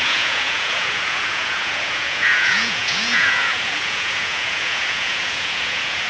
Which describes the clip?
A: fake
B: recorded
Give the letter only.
A